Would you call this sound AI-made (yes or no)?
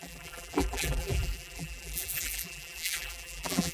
yes